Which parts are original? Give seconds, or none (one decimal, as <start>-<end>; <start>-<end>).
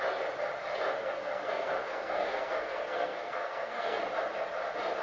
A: 0.0-1.0; 4.0-5.0